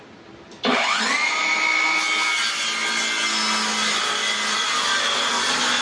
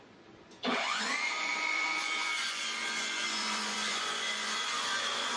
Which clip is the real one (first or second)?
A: first